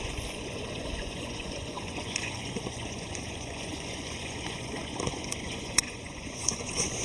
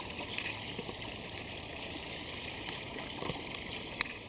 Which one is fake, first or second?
first